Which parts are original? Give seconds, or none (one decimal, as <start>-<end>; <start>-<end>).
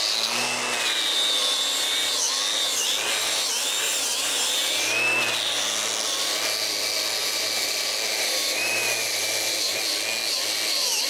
0.0-7.2; 9.8-11.1